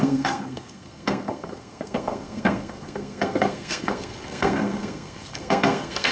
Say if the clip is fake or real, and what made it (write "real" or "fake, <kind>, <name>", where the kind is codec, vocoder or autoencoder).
fake, codec, SNAC